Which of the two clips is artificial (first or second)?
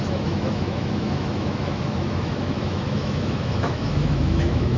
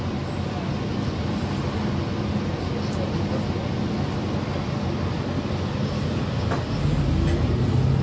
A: first